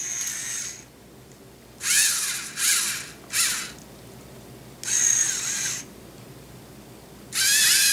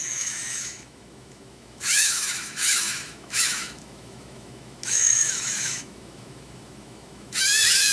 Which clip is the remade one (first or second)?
second